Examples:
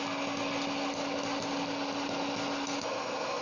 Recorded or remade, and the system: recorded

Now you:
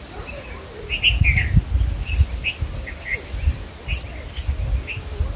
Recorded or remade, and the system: recorded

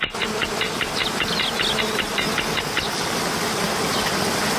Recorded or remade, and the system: recorded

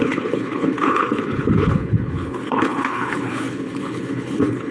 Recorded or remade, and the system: remade, codec, HILCodec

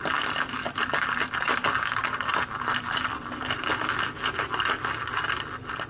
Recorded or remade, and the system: recorded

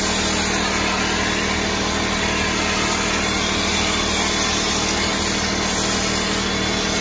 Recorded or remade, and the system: recorded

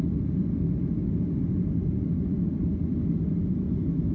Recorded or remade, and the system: recorded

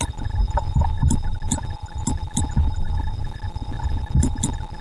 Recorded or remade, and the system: recorded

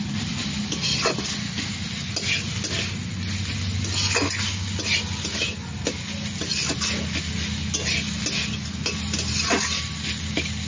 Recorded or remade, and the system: recorded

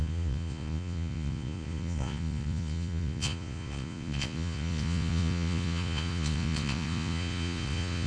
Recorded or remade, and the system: remade, vocoder, Vocos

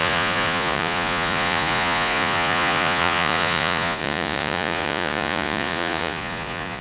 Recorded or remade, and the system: remade, vocoder, Vocos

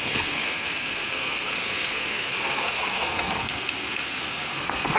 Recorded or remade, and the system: remade, codec, SNAC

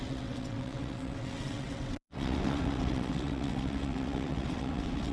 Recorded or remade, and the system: remade, vocoder, WaveNeXt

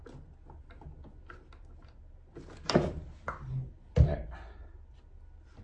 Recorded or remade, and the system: recorded